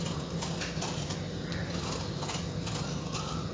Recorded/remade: recorded